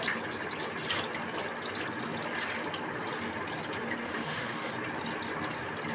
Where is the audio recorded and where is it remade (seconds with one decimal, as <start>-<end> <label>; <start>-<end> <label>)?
0.0-4.0 recorded; 4.0-4.7 remade; 4.7-5.9 recorded